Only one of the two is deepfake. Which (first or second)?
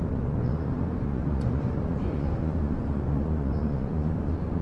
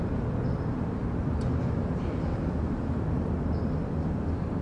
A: first